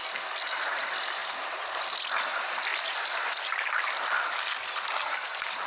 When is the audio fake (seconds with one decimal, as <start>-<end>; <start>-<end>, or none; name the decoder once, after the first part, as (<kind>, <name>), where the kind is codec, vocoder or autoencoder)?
none